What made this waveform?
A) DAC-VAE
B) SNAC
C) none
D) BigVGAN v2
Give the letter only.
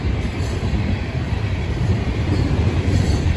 D